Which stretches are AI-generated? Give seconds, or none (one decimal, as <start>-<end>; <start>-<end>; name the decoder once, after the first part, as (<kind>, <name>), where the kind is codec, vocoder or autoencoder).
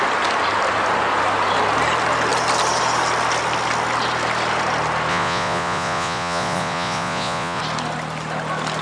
5.1-7.6 (vocoder, Vocos)